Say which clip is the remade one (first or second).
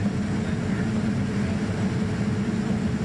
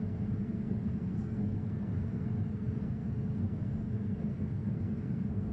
second